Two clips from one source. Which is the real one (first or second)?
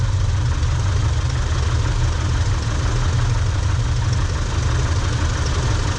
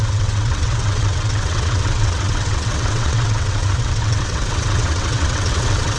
first